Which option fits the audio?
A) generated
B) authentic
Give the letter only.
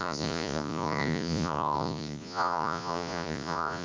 A